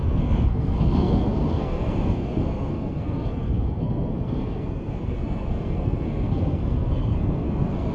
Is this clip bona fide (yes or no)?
no